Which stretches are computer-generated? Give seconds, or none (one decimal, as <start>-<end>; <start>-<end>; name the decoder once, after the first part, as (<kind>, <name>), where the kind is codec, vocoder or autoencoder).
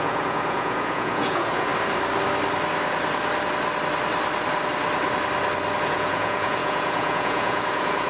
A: 0.0-1.7 (vocoder, Vocos); 5.8-8.1